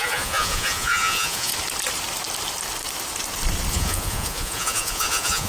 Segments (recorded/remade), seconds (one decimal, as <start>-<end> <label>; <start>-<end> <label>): 0.0-1.5 remade; 1.5-3.7 recorded; 3.7-5.5 remade